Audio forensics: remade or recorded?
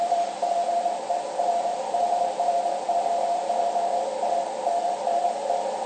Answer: recorded